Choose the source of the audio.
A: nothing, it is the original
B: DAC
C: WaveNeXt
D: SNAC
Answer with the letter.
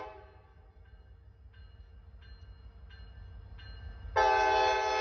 A